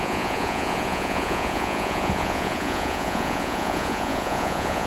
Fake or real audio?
fake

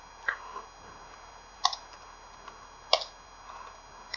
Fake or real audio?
real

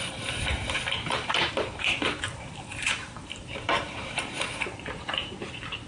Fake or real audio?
fake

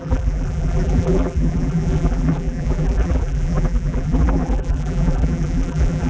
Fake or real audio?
fake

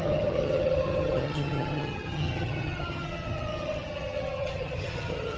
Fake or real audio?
fake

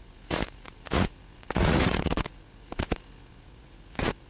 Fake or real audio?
fake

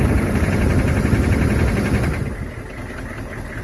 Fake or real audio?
real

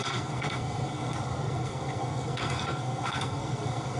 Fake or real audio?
fake